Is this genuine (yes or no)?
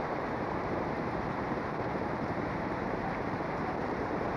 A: no